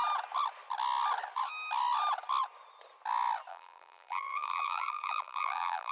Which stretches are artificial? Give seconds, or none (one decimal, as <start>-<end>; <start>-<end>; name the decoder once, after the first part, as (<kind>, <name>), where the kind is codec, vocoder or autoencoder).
3.5-5.9 (vocoder, BigVGAN v2)